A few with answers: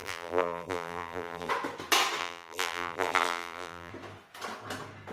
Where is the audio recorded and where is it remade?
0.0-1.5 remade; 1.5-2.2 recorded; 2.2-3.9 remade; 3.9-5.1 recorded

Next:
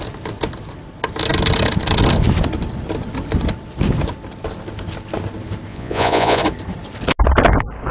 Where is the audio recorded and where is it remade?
0.0-5.7 recorded; 5.7-6.4 remade; 6.4-7.9 recorded

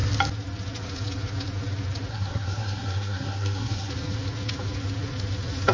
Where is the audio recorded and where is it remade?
0.0-2.1 recorded; 2.1-3.9 remade; 3.9-5.7 recorded